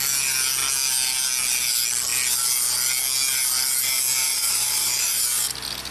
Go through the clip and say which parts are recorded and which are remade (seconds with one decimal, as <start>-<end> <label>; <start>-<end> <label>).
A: 0.0-4.2 recorded; 4.2-5.2 remade; 5.2-5.9 recorded